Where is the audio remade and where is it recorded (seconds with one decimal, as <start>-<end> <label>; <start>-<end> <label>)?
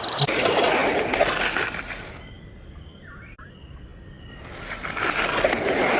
0.0-6.0 recorded